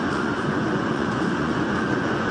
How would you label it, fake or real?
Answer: fake